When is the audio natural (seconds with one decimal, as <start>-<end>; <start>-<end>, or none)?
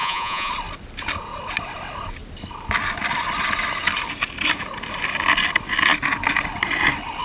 0.5-7.2